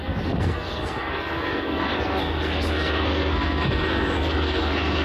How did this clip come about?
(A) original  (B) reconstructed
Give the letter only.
B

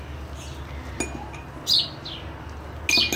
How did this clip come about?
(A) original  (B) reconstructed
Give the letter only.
A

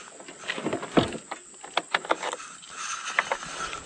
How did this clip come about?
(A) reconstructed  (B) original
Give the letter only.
B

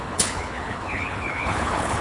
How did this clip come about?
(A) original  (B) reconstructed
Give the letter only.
B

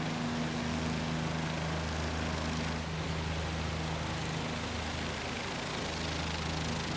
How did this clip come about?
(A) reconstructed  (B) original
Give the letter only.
B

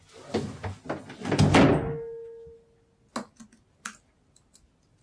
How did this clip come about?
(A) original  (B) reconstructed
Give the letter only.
A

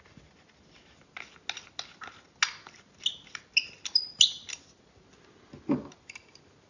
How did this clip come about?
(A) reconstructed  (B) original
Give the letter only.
B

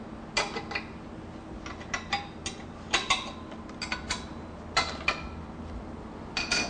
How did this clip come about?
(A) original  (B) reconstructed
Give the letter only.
A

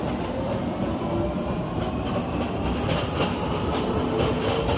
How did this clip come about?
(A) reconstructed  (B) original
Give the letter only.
B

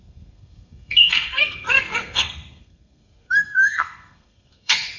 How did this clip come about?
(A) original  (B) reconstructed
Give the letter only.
B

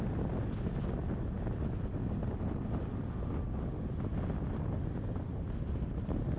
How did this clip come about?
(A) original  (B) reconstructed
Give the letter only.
A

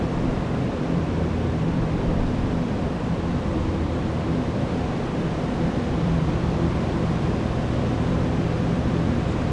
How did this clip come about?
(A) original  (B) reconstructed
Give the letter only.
B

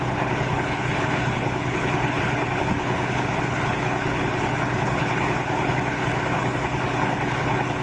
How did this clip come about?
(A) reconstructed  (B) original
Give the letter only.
A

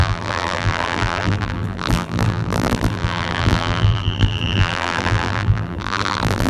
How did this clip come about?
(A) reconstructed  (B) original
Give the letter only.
A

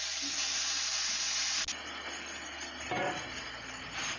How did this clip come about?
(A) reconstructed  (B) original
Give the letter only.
B